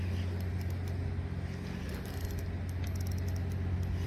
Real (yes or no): yes